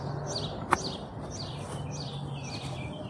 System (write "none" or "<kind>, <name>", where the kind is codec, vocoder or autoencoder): none